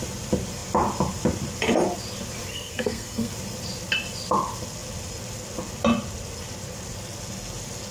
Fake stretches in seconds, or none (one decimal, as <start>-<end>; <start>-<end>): 2.5-3.3